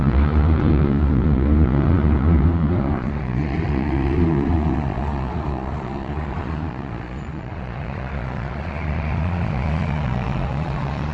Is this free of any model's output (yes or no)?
no